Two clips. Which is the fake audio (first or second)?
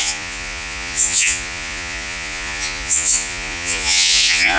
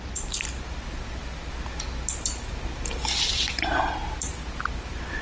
first